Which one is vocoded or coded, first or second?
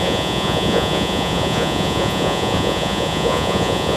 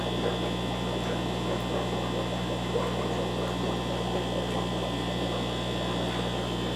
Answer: first